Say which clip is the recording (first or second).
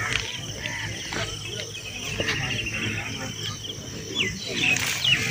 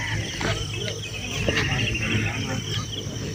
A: first